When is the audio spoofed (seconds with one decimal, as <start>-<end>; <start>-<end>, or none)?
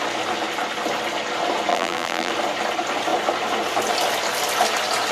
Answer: 1.7-2.3